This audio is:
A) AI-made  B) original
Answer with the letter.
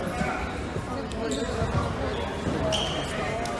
B